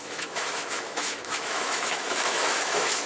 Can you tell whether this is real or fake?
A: fake